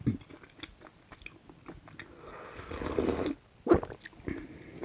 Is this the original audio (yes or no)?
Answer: yes